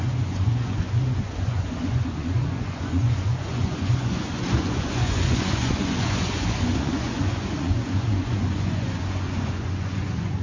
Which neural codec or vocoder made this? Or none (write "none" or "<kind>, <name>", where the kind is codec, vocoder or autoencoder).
vocoder, Vocos